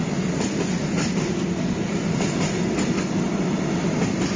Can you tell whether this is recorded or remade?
recorded